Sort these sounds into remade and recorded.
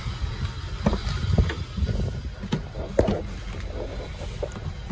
recorded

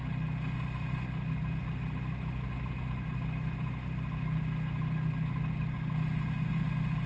recorded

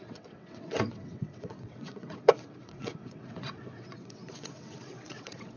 remade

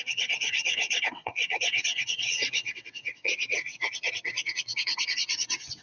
remade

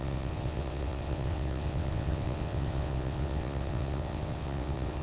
remade